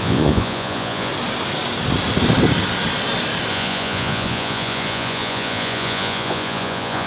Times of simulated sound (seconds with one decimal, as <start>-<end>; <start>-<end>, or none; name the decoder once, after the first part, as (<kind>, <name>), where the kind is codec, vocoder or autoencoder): 0.0-1.1 (vocoder, Vocos); 3.5-7.1